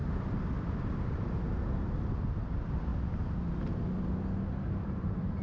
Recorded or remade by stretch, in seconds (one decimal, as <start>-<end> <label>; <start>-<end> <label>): 0.0-1.8 recorded; 1.8-2.9 remade; 2.9-4.6 recorded; 4.6-5.4 remade